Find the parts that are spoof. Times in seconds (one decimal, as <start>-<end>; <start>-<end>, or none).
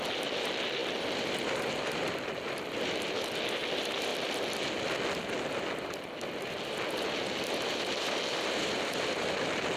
none